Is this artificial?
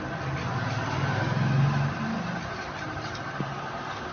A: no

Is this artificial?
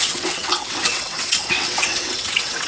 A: yes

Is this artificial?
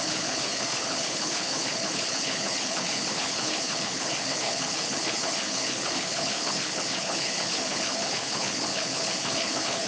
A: yes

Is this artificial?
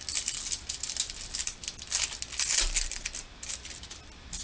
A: no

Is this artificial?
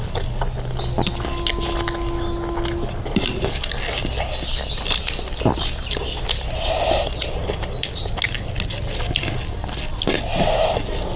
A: no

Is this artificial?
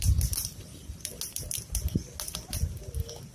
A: no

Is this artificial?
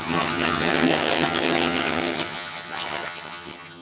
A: yes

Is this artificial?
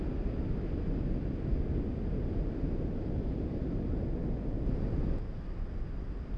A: no